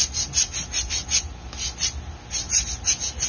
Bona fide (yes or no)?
yes